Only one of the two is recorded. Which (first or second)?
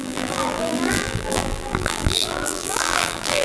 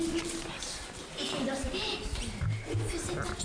second